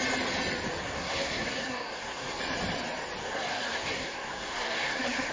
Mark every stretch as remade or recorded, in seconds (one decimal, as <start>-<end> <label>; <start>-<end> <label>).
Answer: 0.0-0.8 recorded; 0.8-2.4 remade; 2.4-3.2 recorded; 3.2-5.3 remade